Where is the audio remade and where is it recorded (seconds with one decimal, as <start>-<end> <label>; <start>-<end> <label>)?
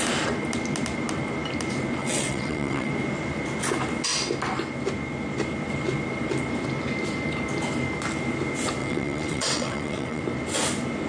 0.0-2.0 recorded; 2.0-2.9 remade; 2.9-8.8 recorded; 8.8-10.2 remade; 10.2-11.1 recorded